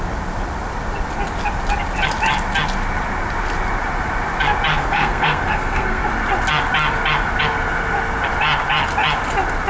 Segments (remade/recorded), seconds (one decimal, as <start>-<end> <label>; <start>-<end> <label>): 0.0-4.7 recorded; 4.7-6.1 remade; 6.1-9.7 recorded